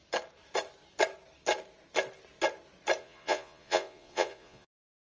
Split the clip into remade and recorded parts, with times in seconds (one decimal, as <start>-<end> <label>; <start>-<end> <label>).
0.0-3.0 recorded; 3.0-5.0 remade